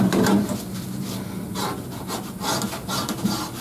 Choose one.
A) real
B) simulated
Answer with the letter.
A